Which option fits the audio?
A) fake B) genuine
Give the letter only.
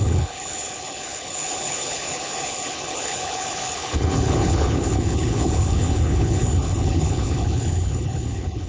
A